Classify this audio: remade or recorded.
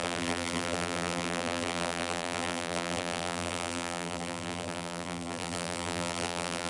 remade